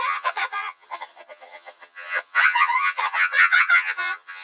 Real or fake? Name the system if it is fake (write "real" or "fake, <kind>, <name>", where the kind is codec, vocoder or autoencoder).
fake, vocoder, HiFi-GAN